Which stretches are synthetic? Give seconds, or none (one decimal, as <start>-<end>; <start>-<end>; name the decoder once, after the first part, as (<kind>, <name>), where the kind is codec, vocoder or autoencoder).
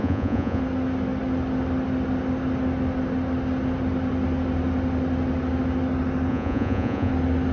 0.0-0.6 (vocoder, Vocos); 6.3-7.1